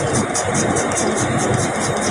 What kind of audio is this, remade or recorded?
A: recorded